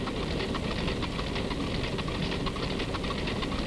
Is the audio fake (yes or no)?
no